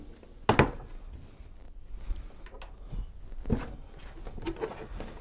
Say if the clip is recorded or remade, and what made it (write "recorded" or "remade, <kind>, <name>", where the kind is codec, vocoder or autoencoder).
recorded